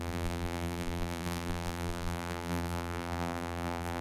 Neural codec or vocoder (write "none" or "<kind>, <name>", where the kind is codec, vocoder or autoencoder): vocoder, BigVGAN v2